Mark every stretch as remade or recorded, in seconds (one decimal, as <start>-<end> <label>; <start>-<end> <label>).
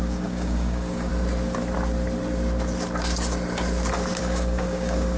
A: 0.0-1.1 remade; 1.1-4.2 recorded; 4.2-5.2 remade